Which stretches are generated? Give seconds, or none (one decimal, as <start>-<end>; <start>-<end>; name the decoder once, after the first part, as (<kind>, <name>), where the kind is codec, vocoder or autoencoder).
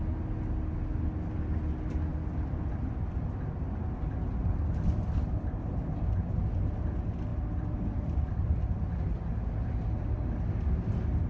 7.3-8.6 (vocoder, BigVGAN v2)